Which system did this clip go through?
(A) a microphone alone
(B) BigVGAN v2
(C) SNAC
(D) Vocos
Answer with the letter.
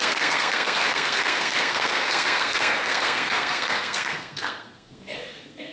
C